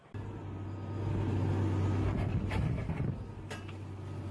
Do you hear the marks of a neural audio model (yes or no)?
no